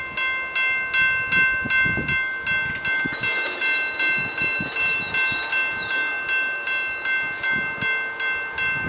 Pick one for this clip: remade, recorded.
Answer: recorded